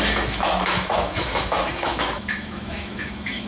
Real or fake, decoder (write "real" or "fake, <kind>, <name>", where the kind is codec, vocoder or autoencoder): fake, autoencoder, DAC-VAE